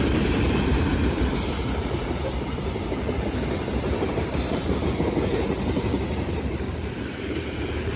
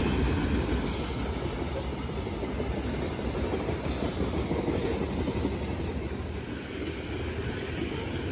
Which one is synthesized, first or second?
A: first